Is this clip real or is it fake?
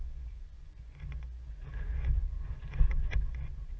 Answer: fake